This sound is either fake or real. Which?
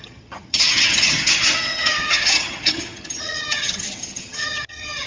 fake